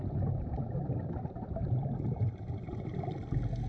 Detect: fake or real real